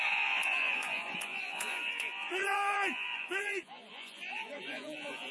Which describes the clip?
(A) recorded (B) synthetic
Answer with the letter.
B